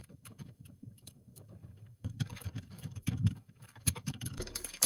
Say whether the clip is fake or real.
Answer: fake